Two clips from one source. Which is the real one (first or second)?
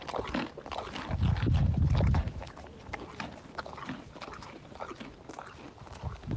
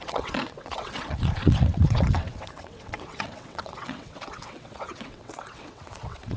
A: first